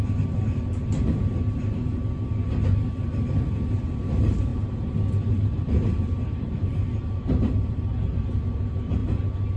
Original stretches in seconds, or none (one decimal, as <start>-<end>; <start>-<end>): 4.5-5.3; 9.0-9.6